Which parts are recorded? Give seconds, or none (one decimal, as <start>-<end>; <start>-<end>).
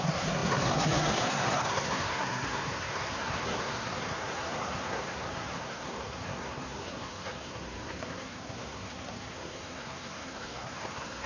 none